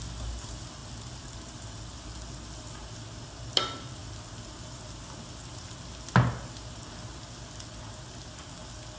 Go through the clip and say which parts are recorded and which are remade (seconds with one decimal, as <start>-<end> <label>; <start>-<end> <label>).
0.0-9.0 recorded